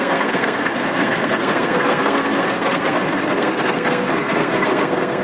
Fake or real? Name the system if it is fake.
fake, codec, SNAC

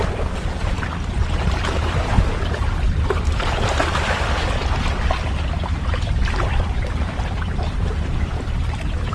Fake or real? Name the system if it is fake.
fake, vocoder, BigVGAN v2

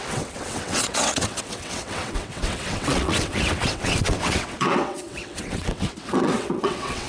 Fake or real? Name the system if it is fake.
fake, vocoder, WaveNeXt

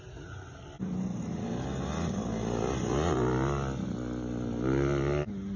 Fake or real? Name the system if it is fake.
real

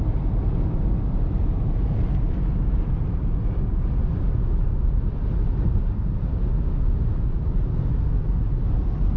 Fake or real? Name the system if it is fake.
real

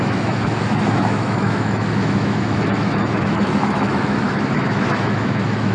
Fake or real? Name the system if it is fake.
fake, autoencoder, DAC-VAE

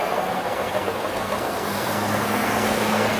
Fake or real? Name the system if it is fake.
fake, codec, SNAC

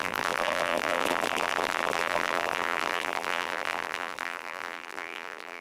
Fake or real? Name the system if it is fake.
fake, vocoder, BigVGAN v2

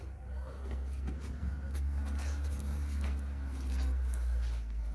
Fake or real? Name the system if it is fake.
fake, codec, SNAC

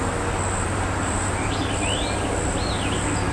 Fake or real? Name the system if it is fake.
real